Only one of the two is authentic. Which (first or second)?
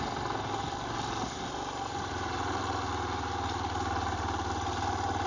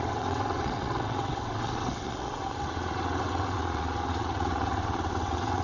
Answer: first